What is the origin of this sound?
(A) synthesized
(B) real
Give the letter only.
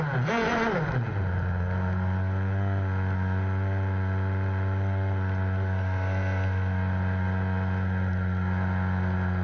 B